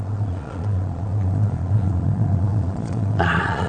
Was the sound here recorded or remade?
remade